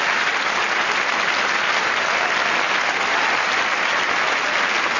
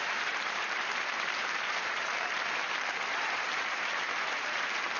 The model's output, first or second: second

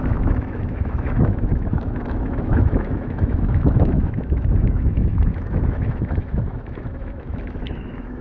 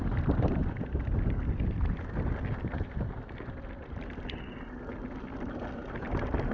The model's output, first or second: first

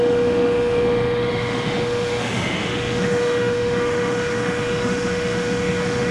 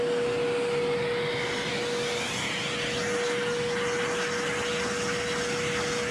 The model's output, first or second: first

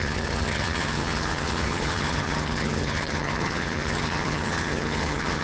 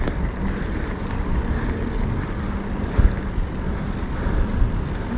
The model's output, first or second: first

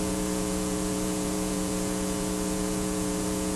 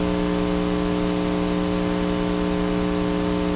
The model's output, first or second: first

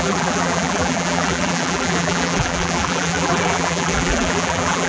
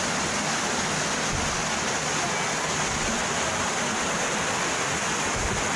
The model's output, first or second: first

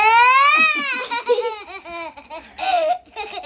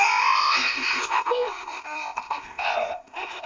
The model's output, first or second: second